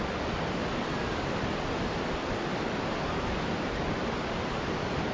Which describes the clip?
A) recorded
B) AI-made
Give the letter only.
A